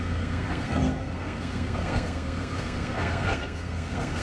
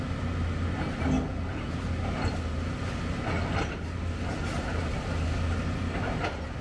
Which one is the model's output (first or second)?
first